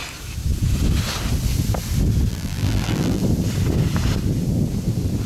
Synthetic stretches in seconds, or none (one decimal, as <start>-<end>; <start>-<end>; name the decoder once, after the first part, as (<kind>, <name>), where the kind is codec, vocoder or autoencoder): 2.3-3.2 (vocoder, BigVGAN v2)